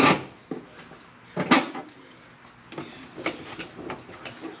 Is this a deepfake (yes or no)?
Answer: no